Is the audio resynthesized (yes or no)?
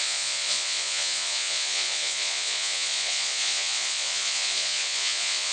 yes